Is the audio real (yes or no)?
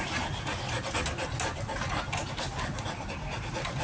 yes